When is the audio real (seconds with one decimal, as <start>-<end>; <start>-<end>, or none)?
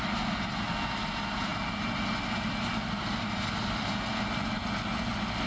0.0-5.5